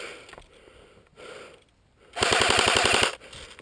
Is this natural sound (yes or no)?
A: yes